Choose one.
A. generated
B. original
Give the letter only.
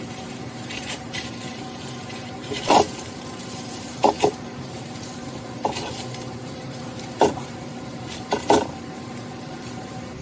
A